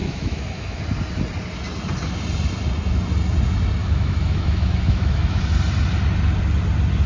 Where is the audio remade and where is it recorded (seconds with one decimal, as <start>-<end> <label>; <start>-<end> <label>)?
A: 0.0-0.8 remade; 0.8-3.8 recorded; 3.8-5.4 remade; 5.4-7.1 recorded